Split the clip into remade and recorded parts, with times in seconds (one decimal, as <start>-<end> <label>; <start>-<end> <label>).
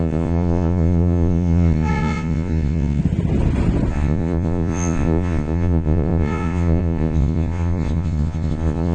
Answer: 0.0-3.0 remade; 3.0-3.9 recorded; 3.9-8.9 remade